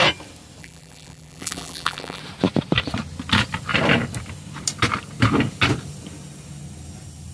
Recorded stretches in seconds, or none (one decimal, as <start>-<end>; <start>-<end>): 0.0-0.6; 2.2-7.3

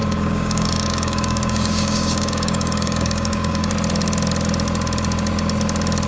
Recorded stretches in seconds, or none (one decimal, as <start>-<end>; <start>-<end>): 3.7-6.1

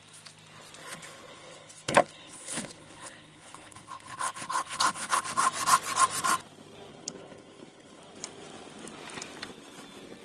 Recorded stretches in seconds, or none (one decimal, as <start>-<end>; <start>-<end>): 0.0-0.8; 5.2-6.9; 8.0-10.2

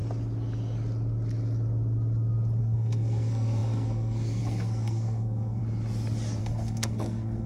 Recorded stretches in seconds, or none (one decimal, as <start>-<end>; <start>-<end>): 0.0-2.6; 5.6-6.4

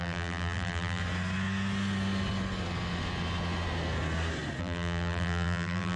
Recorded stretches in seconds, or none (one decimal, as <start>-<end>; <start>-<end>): 1.0-4.6

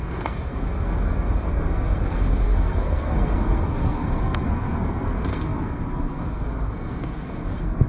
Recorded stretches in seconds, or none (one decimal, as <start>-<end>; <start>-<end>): none